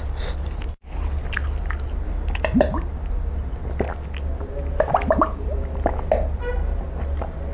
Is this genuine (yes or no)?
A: yes